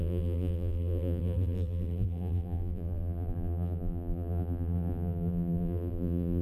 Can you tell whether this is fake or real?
fake